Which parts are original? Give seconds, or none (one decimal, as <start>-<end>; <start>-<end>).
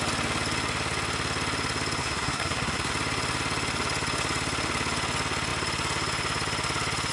0.0-2.0; 2.9-7.1